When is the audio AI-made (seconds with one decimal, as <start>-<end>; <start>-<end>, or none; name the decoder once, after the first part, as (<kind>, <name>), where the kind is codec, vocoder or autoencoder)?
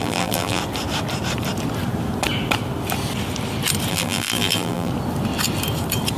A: 0.0-0.6 (vocoder, BigVGAN v2); 3.9-4.9